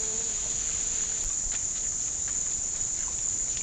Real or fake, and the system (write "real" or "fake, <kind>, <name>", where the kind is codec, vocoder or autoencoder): real